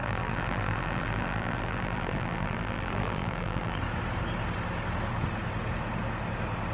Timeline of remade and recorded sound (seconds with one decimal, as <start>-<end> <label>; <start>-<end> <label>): 0.0-3.8 remade; 3.8-6.7 recorded

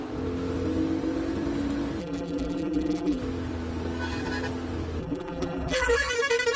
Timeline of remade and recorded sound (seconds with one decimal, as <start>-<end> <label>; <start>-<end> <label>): 0.0-2.0 recorded; 2.0-3.2 remade; 3.2-5.0 recorded; 5.0-6.1 remade; 6.1-6.6 recorded

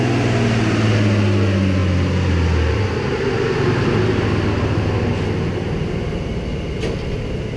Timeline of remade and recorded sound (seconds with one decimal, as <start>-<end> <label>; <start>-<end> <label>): 0.0-7.6 recorded

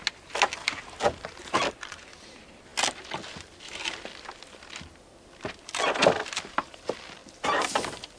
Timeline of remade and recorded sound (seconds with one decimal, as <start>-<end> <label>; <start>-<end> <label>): 0.0-1.4 recorded; 1.4-2.7 remade; 2.7-6.4 recorded; 6.4-8.2 remade

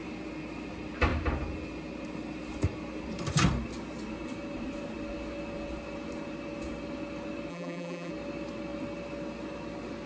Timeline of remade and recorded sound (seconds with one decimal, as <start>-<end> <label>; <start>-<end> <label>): 0.0-7.5 recorded; 7.5-8.1 remade; 8.1-10.1 recorded

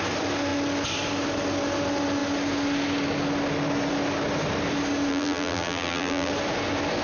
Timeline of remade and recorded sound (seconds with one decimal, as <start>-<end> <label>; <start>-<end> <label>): 0.0-5.1 recorded; 5.1-6.3 remade; 6.3-7.0 recorded